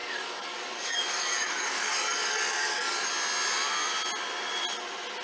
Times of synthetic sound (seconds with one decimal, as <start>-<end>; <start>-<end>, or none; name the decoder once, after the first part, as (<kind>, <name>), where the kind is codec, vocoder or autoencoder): 0.0-3.1 (codec, DAC)